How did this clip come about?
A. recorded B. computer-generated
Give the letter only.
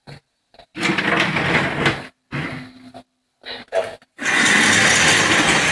A